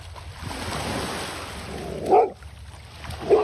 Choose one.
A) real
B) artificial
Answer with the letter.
A